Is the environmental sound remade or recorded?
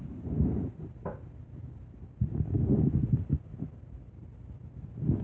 remade